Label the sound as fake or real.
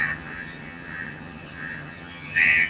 fake